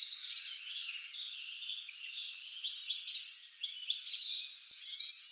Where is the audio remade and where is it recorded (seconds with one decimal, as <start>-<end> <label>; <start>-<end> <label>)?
0.0-5.3 recorded